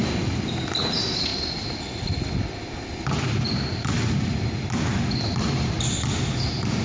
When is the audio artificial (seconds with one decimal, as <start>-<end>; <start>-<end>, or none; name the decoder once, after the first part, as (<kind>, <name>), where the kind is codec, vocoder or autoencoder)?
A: 0.0-4.6 (vocoder, BigVGAN v2); 5.2-6.8

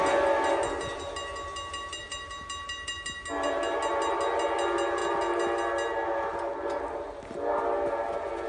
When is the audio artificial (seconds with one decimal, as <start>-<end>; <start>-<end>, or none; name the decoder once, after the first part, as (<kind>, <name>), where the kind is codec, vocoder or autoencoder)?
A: none

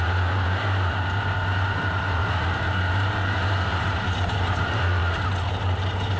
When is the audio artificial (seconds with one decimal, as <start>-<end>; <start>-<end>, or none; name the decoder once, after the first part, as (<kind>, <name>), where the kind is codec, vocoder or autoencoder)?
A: 0.0-2.2 (vocoder, BigVGAN v2); 2.9-5.0; 5.5-6.2

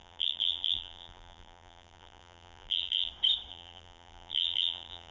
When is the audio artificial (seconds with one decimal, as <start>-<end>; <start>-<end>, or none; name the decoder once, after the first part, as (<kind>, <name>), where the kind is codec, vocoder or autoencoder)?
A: 0.0-3.1 (vocoder, BigVGAN v2); 3.5-5.1

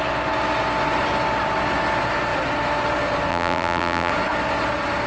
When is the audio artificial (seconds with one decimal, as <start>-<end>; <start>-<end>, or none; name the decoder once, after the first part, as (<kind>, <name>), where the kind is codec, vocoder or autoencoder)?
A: 3.3-4.1 (vocoder, BigVGAN v2)

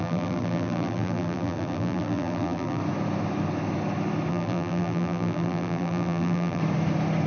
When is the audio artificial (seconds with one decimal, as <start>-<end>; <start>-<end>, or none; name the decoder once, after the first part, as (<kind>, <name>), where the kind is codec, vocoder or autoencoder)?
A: 0.0-2.8 (vocoder, BigVGAN v2); 4.3-6.6